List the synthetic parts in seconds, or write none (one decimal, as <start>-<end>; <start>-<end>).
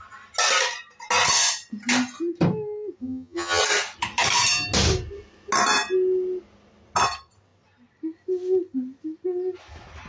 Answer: 3.0-3.6